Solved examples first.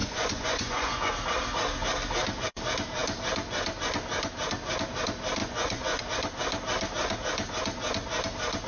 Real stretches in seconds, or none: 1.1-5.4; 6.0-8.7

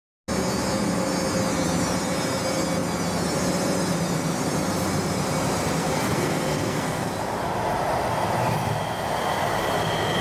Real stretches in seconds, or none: 0.0-5.8; 7.1-10.2

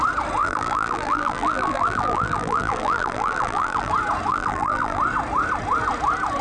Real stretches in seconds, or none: 0.0-0.4; 3.9-4.3; 5.0-6.4

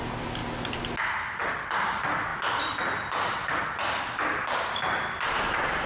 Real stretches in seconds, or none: 0.0-5.9

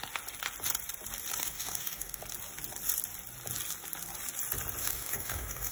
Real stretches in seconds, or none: 0.0-1.4; 2.2-4.8

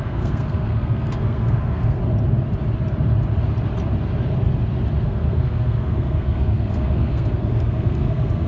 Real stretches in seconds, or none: 2.0-5.0